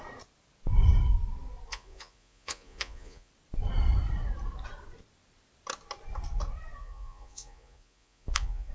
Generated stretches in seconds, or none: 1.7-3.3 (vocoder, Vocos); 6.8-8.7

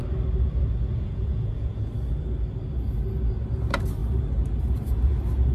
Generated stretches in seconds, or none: 0.9-1.9 (vocoder, Vocos)

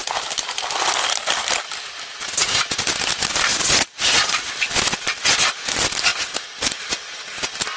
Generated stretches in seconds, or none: 3.5-4.5 (vocoder, Vocos)

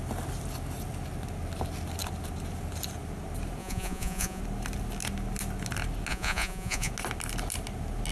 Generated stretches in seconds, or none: 3.6-4.4 (vocoder, Vocos); 6.1-6.9

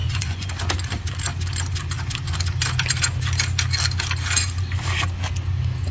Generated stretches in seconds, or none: 0.0-0.5 (vocoder, Vocos)

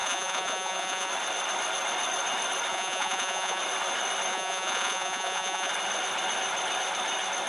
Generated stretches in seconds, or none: 0.0-1.1 (vocoder, Vocos); 2.7-3.6; 4.3-5.7